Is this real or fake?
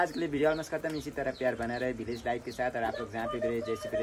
real